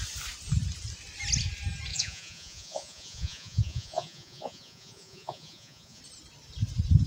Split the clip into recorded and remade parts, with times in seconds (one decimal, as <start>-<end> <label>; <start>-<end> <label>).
0.0-1.9 recorded; 1.9-6.0 remade; 6.0-7.1 recorded